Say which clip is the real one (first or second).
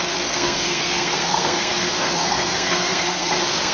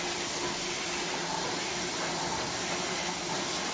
second